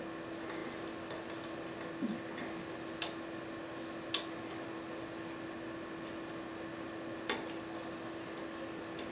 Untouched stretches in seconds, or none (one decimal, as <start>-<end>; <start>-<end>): 0.0-9.1